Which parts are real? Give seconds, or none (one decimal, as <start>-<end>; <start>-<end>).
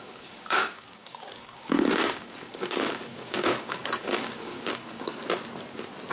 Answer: 5.1-6.1